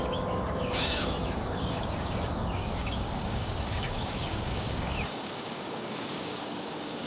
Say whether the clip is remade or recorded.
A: remade